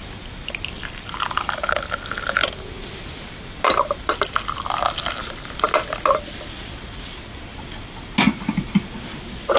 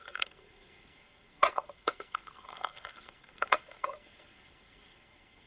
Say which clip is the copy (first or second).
second